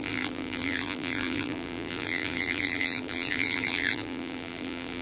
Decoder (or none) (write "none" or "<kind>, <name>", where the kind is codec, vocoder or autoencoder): vocoder, BigVGAN v2